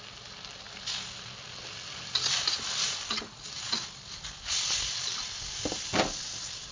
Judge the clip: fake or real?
real